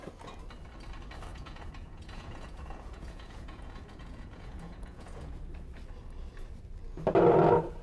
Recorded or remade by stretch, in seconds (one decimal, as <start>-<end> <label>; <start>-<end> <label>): 0.0-1.3 recorded; 1.3-5.4 remade; 5.4-7.8 recorded